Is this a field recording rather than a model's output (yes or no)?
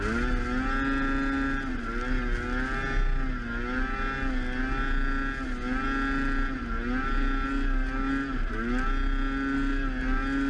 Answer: yes